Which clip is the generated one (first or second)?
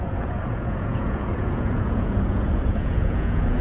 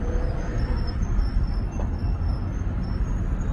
first